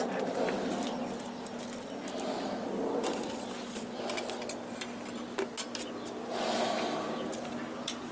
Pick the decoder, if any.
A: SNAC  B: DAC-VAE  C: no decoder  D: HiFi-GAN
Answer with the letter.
C